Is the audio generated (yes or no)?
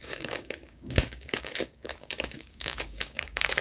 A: yes